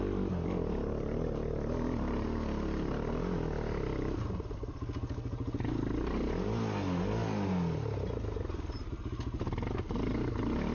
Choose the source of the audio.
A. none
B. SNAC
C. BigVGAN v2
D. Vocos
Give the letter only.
A